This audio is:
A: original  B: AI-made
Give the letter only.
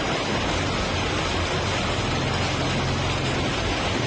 A